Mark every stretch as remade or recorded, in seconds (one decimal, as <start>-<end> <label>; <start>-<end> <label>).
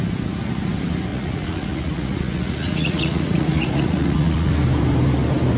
0.0-1.1 recorded; 1.1-4.5 remade; 4.5-5.6 recorded